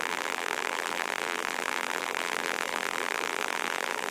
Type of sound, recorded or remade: remade